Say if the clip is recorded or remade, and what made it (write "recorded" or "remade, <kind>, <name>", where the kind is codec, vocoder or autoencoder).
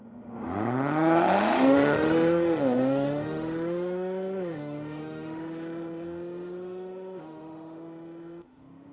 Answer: remade, autoencoder, DAC-VAE